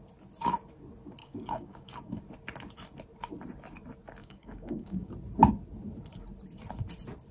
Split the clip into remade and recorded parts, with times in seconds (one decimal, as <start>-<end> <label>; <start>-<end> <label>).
0.0-1.2 recorded; 1.2-2.2 remade; 2.2-4.2 recorded; 4.2-5.1 remade; 5.1-7.3 recorded